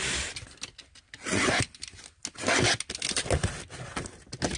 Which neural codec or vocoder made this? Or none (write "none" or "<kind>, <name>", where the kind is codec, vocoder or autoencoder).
none